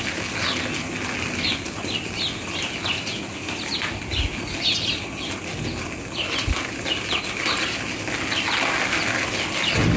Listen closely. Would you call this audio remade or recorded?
recorded